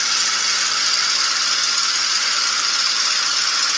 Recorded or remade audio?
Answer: recorded